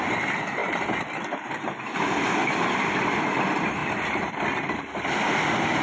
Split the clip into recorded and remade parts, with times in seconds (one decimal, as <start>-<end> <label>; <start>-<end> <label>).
0.0-0.6 recorded; 0.6-1.8 remade; 1.8-3.8 recorded; 3.8-5.8 remade